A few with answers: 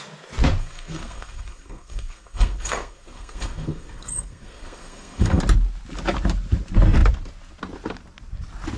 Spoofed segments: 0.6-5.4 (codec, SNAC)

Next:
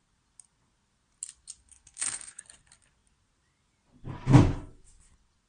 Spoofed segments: 1.6-2.4 (codec, SNAC)

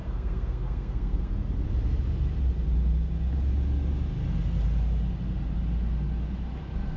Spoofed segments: 0.0-1.3 (codec, SNAC)

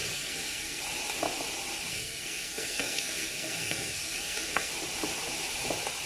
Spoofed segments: 0.0-0.8 (codec, SNAC); 1.9-4.7

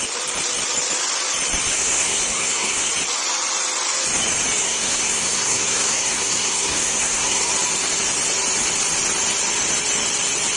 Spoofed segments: 1.7-2.9 (codec, SNAC); 4.6-7.5

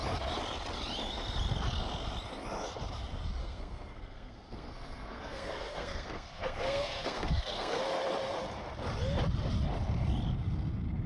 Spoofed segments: 3.4-7.8 (codec, SNAC)

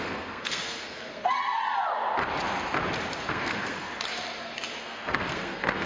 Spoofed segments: 0.0-1.6 (codec, SNAC); 3.3-3.9; 4.8-5.9

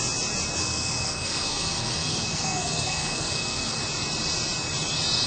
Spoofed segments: 0.6-3.8 (codec, SNAC)